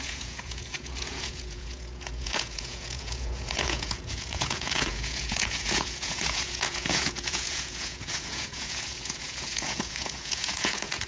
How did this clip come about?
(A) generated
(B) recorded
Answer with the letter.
A